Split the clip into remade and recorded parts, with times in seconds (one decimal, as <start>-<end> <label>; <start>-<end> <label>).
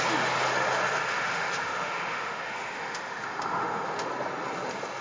0.0-1.1 recorded; 1.1-4.1 remade; 4.1-5.0 recorded